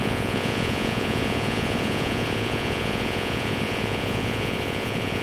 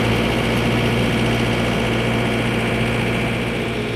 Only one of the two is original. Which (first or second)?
second